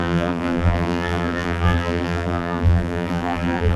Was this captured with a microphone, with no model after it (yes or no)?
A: no